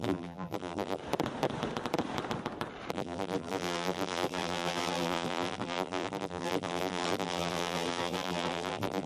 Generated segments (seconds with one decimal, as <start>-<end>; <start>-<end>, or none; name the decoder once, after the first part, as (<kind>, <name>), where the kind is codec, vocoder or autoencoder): 0.0-1.0 (vocoder, BigVGAN v2); 2.9-9.1